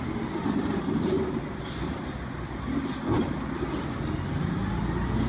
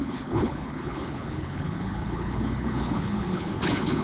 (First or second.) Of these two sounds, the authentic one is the first